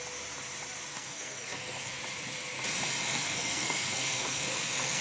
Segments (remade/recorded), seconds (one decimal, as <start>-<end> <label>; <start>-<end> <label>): 0.0-0.9 recorded; 0.9-2.0 remade; 2.0-3.1 recorded; 3.1-5.0 remade